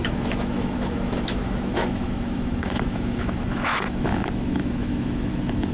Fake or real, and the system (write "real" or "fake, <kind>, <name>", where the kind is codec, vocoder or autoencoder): fake, autoencoder, DAC-VAE